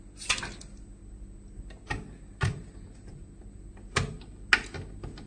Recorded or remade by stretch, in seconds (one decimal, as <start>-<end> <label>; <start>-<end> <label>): 0.0-1.0 recorded; 1.0-4.2 remade; 4.2-5.3 recorded